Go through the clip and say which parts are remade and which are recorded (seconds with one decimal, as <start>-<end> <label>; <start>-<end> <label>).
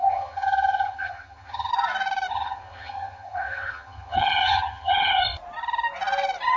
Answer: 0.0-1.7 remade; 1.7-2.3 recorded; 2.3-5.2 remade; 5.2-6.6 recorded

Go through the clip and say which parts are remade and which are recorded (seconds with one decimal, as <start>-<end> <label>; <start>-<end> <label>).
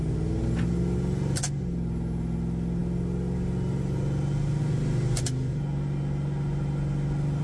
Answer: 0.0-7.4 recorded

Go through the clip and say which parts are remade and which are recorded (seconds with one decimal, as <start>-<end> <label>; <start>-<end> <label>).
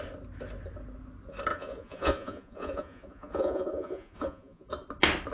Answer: 0.0-1.5 recorded; 1.5-4.7 remade; 4.7-5.3 recorded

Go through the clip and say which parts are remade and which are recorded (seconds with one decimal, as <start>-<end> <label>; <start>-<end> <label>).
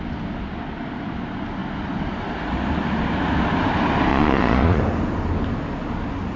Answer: 0.0-4.1 recorded; 4.1-4.8 remade; 4.8-6.4 recorded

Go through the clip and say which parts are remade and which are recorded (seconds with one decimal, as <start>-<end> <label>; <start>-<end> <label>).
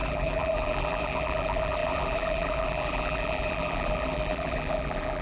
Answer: 0.0-5.2 remade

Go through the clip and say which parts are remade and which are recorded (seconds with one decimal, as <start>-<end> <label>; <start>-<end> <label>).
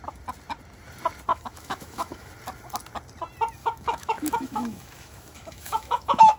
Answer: 0.0-1.3 recorded; 1.3-2.3 remade; 2.3-3.6 recorded; 3.6-6.4 remade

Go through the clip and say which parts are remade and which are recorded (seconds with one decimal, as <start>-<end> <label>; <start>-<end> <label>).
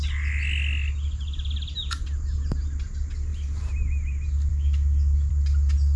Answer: 0.0-4.5 recorded; 4.5-5.3 remade; 5.3-6.0 recorded